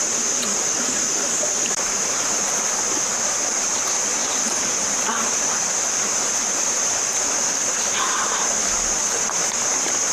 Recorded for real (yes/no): yes